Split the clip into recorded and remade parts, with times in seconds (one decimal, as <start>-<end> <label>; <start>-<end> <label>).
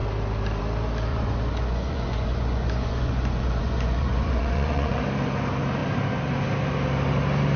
0.0-1.1 recorded; 1.1-5.0 remade; 5.0-7.6 recorded